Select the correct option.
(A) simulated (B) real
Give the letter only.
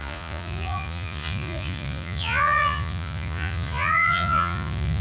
A